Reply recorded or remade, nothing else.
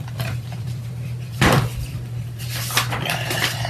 remade